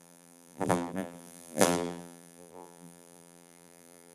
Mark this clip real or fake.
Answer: fake